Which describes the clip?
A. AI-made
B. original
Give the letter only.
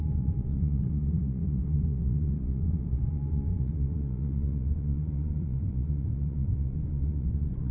A